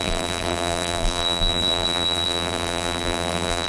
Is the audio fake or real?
fake